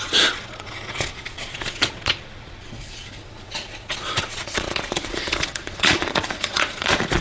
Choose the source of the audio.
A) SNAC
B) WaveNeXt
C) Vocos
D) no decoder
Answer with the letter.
C